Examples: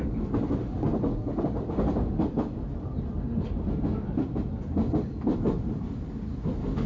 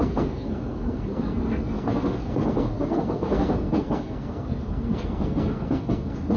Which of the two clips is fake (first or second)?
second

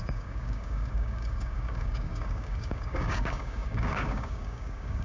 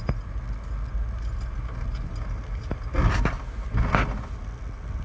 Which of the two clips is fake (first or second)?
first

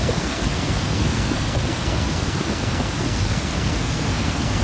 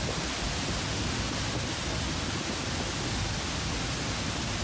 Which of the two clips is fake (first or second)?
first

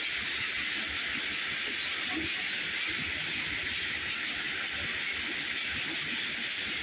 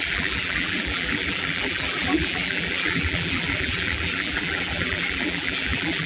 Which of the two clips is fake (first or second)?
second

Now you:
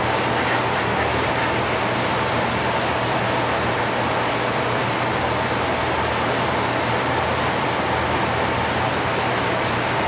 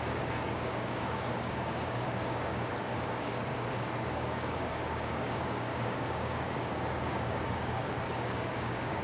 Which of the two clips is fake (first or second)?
second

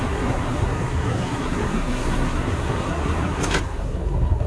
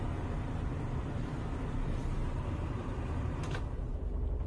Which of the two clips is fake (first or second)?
first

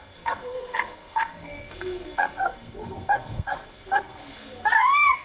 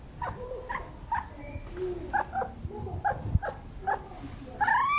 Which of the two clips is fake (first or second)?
first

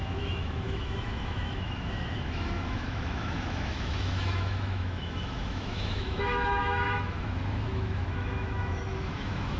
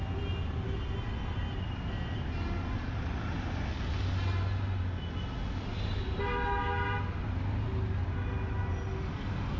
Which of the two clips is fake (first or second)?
first